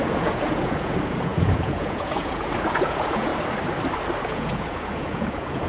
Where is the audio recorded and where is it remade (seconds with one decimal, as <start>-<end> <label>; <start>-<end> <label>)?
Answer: 0.0-3.3 remade; 3.3-4.2 recorded; 4.2-5.7 remade